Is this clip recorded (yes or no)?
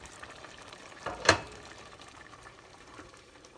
no